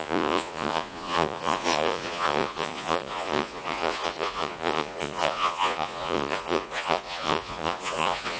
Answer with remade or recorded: remade